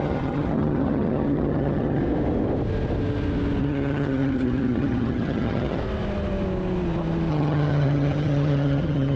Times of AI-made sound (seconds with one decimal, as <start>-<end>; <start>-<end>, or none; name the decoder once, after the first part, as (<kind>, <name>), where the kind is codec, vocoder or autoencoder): 0.0-2.0 (vocoder, HiFi-GAN); 3.6-5.8; 7.3-9.2